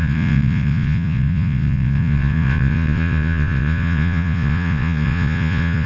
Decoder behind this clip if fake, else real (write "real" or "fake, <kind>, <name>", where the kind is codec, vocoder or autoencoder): fake, vocoder, Vocos